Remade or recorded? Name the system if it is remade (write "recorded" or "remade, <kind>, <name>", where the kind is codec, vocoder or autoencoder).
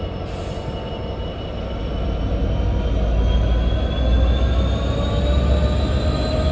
recorded